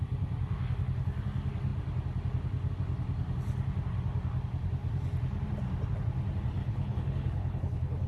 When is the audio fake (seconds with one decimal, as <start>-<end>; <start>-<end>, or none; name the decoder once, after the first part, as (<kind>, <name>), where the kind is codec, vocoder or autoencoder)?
6.6-8.1 (codec, HILCodec)